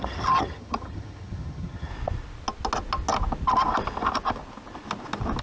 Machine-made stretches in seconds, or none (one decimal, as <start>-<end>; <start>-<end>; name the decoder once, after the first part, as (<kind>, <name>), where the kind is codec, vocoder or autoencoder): 0.0-1.9 (vocoder, HiFi-GAN)